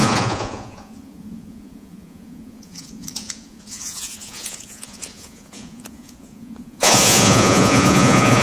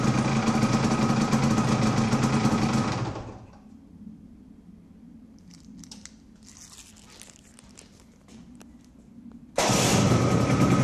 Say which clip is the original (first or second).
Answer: second